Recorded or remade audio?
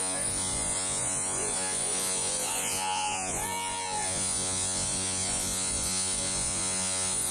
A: remade